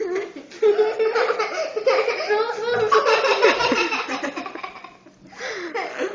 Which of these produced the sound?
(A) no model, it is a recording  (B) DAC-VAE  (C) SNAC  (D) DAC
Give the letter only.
A